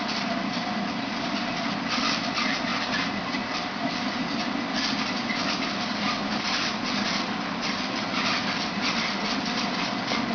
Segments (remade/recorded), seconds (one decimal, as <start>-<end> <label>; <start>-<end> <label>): 0.0-10.3 recorded